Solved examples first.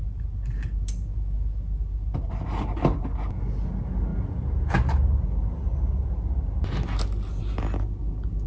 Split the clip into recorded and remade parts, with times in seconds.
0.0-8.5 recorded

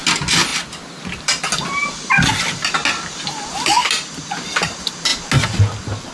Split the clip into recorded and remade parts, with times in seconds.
0.0-6.1 recorded

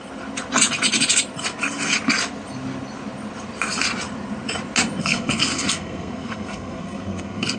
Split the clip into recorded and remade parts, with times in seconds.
0.0-5.0 recorded; 5.0-7.6 remade

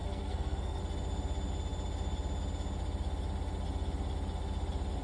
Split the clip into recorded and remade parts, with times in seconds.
0.0-0.8 remade; 0.8-5.0 recorded

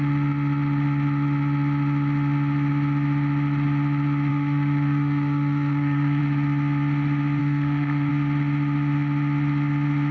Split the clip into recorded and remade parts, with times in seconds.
0.0-4.3 recorded; 4.3-6.2 remade; 6.2-7.4 recorded; 7.4-8.1 remade; 8.1-10.1 recorded

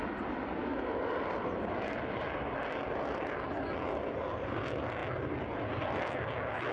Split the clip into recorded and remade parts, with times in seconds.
0.0-6.7 recorded

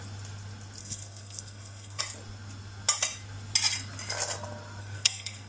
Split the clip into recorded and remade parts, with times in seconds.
0.0-0.8 recorded; 0.8-2.0 remade; 2.0-4.8 recorded; 4.8-5.5 remade